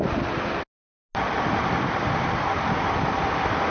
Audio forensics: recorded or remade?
recorded